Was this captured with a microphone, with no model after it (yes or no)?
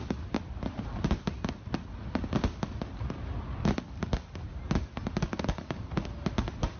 yes